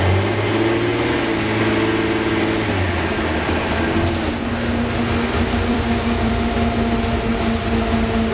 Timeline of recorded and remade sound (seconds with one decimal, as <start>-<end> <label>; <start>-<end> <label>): 0.0-5.7 recorded; 5.7-6.4 remade; 6.4-8.3 recorded